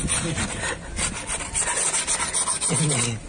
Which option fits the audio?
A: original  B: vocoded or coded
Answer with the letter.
A